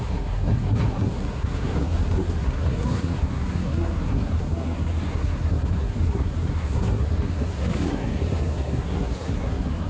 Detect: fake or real fake